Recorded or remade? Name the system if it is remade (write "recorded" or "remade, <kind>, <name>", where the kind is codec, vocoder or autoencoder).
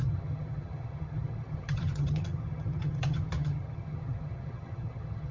remade, vocoder, HiFi-GAN